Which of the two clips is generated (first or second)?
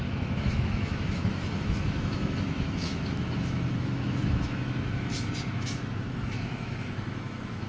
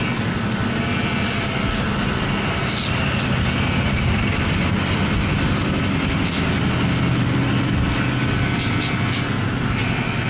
first